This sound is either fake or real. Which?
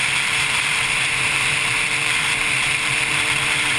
fake